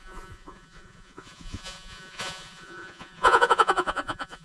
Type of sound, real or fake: fake